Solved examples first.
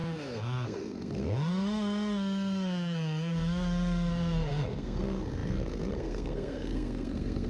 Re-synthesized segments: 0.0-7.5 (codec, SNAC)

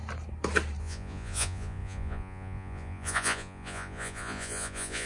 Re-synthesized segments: 0.8-5.1 (vocoder, Vocos)